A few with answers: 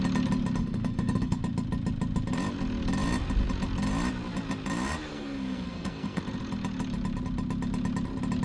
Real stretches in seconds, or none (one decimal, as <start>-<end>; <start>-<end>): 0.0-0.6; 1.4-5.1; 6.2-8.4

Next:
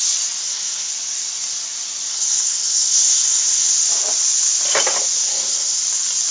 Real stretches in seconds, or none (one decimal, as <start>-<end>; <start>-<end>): 0.0-0.4; 0.9-2.1; 3.7-5.3; 5.8-6.3

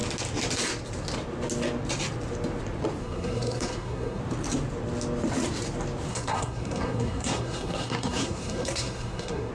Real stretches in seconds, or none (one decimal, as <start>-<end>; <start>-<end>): 0.0-3.0; 4.2-6.1